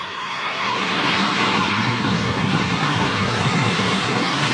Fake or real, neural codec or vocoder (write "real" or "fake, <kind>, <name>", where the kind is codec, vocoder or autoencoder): fake, codec, SNAC